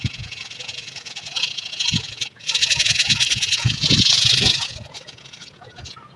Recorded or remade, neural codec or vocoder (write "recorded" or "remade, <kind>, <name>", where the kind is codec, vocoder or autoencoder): remade, vocoder, Vocos